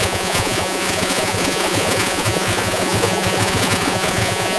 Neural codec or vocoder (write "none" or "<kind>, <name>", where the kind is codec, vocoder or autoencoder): vocoder, Vocos